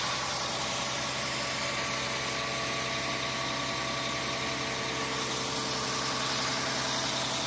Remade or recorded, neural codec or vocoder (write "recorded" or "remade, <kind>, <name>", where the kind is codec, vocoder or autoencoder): recorded